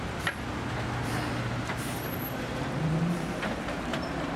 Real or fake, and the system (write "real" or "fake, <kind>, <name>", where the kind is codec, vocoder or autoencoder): fake, vocoder, BigVGAN v2